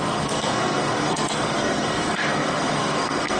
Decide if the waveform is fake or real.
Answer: fake